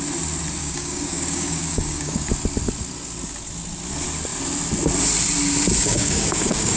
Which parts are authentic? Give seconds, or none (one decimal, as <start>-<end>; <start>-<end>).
0.0-0.6; 2.3-5.8